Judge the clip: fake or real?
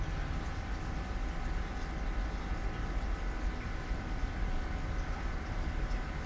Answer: real